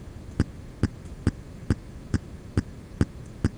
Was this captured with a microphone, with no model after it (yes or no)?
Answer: yes